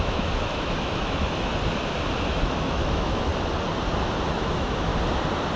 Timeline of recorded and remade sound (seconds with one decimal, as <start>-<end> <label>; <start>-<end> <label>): 0.0-1.5 remade; 1.5-2.3 recorded; 2.3-3.3 remade; 3.3-4.3 recorded; 4.3-4.9 remade; 4.9-5.6 recorded